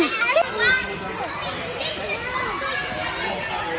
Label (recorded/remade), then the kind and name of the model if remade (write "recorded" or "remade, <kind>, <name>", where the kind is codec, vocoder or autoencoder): recorded